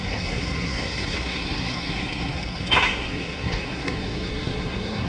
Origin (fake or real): fake